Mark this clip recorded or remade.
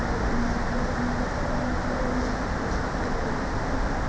recorded